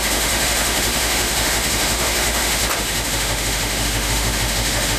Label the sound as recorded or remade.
remade